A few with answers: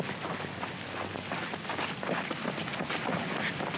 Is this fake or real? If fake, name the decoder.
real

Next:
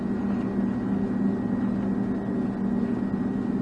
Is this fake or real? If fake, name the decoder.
real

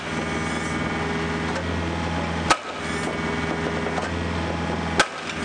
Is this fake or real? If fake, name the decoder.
real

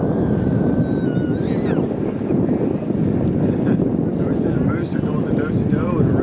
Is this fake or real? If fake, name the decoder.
real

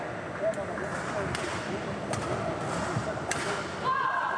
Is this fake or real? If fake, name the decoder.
real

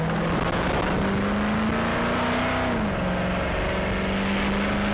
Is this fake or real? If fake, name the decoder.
real